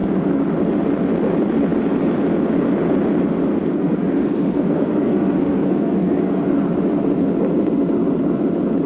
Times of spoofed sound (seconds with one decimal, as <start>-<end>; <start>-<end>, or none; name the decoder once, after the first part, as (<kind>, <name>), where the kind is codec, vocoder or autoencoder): 3.5-6.5 (codec, SNAC)